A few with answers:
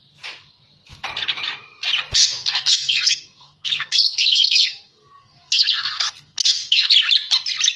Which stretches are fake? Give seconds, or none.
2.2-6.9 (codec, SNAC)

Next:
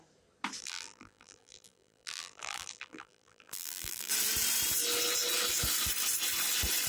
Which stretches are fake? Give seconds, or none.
0.6-4.1 (vocoder, BigVGAN v2)

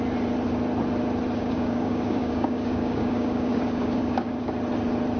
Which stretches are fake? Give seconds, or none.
1.4-4.5 (codec, DAC)

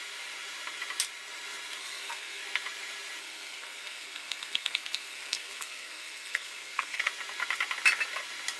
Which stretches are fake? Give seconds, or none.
1.8-2.4 (codec, SNAC); 3.2-7.0